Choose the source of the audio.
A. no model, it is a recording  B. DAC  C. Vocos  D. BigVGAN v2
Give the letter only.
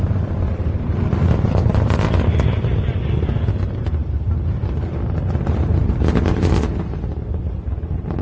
D